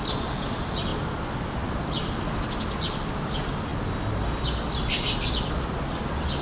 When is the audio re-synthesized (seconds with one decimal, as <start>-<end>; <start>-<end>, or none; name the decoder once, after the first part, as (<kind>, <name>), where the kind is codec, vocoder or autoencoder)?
none